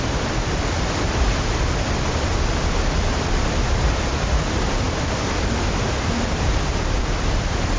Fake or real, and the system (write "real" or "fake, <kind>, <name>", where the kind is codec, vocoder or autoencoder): fake, vocoder, BigVGAN v2